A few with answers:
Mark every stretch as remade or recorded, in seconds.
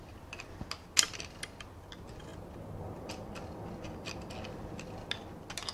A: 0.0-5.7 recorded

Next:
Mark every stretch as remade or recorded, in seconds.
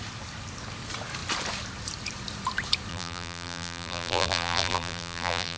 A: 0.0-2.9 recorded; 2.9-5.6 remade